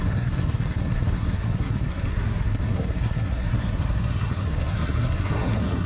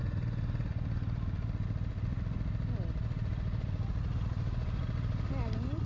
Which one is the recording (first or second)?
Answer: second